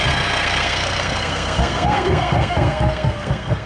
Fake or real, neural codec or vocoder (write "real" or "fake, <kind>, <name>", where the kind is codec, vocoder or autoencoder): fake, codec, SNAC